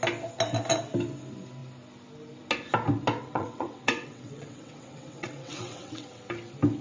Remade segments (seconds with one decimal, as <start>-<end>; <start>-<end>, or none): 3.2-6.2